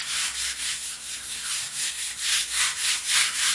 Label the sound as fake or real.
fake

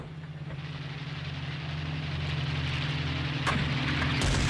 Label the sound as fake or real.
real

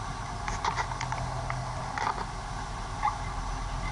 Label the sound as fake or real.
real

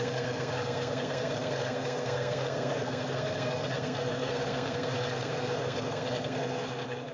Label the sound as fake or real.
fake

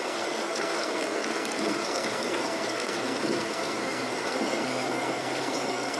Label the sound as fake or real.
fake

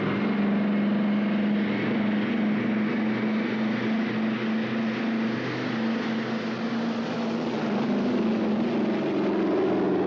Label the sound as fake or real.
real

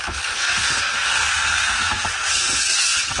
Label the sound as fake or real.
fake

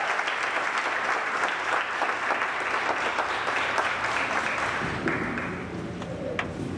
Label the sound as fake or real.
real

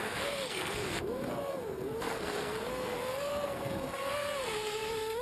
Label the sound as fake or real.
fake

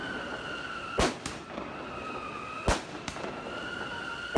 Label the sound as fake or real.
real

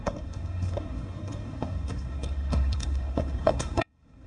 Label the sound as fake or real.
fake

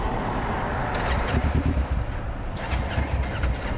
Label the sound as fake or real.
real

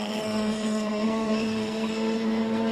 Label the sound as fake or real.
fake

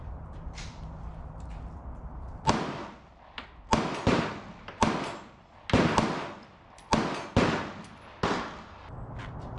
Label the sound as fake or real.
real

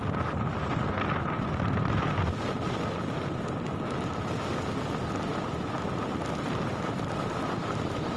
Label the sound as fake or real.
real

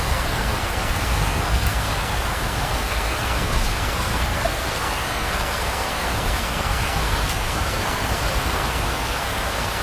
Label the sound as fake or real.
fake